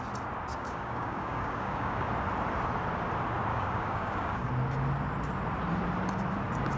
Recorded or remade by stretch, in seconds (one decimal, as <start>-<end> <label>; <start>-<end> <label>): 0.0-0.5 recorded; 0.5-2.1 remade; 2.1-3.5 recorded; 3.5-4.5 remade; 4.5-6.8 recorded